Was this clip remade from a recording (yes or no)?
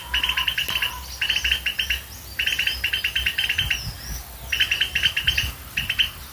no